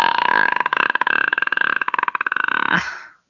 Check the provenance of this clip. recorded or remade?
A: recorded